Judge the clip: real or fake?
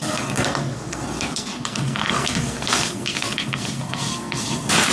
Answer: fake